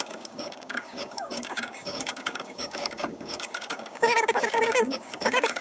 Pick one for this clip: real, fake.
fake